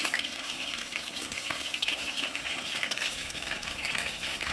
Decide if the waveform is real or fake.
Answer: fake